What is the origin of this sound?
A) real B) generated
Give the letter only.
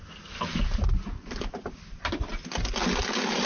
A